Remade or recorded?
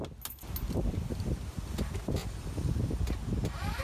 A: recorded